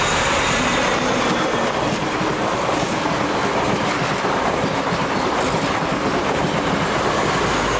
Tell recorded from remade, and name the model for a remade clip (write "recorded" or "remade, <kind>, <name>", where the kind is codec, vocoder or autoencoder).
recorded